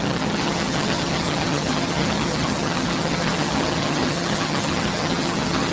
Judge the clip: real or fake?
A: fake